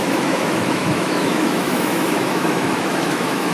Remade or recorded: remade